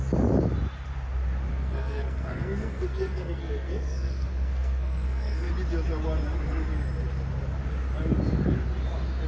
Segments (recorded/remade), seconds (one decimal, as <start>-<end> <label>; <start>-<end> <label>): 0.0-1.5 recorded; 1.5-5.5 remade; 5.5-9.3 recorded